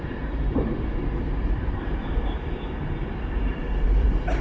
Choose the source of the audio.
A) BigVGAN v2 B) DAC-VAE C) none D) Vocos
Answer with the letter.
A